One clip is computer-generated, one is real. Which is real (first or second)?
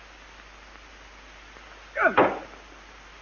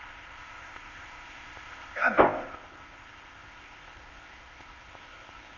first